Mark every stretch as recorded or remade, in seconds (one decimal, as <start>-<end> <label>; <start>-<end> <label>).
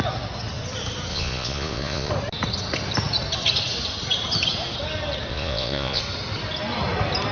0.0-1.1 recorded; 1.1-2.1 remade; 2.1-5.3 recorded; 5.3-6.0 remade; 6.0-7.3 recorded